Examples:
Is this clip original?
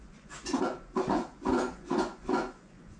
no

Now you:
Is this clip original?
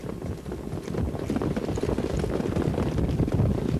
yes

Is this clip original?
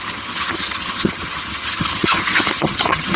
no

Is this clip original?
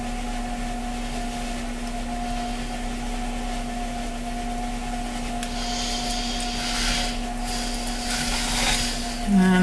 yes